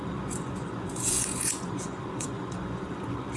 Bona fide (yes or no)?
no